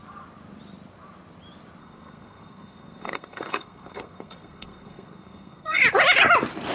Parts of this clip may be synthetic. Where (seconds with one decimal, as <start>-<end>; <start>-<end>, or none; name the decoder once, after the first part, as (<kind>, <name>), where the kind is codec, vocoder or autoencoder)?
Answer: 1.8-5.8 (codec, SNAC)